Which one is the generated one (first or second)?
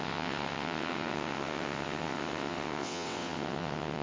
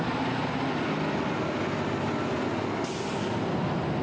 first